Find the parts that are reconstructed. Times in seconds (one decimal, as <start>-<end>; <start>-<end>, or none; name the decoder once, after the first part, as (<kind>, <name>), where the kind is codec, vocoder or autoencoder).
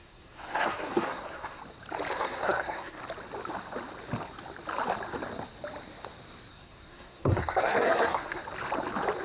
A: 0.0-1.6 (codec, SNAC); 2.1-3.0; 6.5-8.4